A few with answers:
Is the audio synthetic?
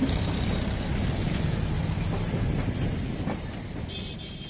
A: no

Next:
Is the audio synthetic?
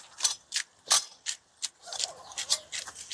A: no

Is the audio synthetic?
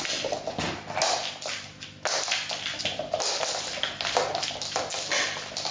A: no